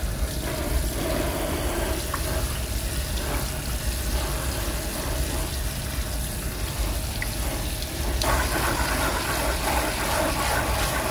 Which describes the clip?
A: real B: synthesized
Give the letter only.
A